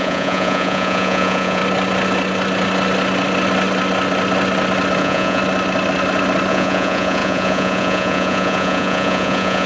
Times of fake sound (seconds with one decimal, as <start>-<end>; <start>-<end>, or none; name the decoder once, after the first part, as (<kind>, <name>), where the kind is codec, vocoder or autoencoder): 0.0-1.6 (vocoder, Vocos); 5.0-5.4; 6.5-9.7